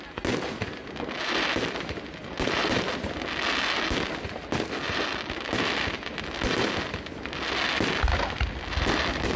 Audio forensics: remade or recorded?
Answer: recorded